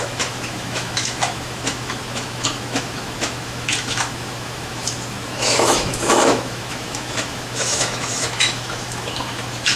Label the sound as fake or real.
fake